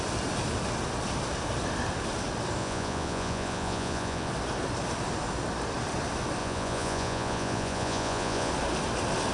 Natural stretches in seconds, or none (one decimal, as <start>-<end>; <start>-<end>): 0.0-2.6; 4.3-6.4; 8.5-9.3